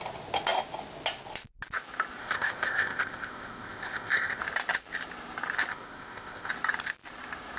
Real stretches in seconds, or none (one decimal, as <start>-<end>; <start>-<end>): 0.0-2.2; 4.4-5.7; 6.5-7.6